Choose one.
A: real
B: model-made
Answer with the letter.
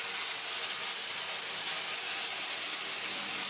A